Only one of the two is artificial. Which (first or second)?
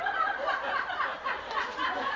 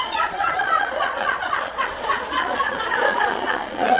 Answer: second